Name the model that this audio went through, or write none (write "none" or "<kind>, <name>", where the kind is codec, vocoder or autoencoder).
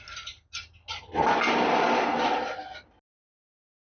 none